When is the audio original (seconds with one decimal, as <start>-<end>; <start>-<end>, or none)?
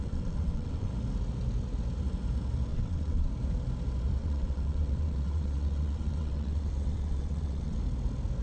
0.9-2.7; 3.3-4.2; 7.8-8.4